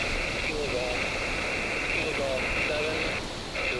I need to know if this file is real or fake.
real